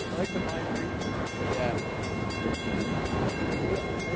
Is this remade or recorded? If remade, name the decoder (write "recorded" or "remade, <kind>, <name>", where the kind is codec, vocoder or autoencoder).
recorded